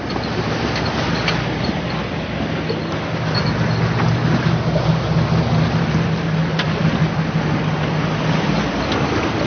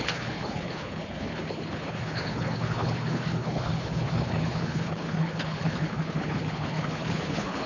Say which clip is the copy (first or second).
second